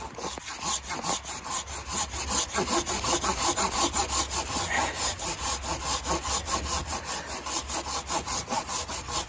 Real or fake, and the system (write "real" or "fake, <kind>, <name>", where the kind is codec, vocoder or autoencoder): real